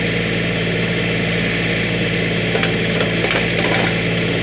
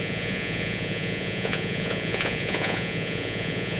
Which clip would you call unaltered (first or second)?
first